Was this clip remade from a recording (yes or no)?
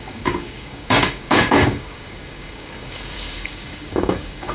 yes